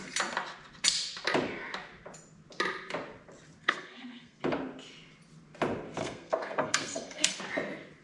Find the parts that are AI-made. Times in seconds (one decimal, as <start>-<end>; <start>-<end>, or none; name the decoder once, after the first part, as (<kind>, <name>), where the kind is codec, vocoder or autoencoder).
3.6-4.4 (codec, SNAC); 6.0-7.4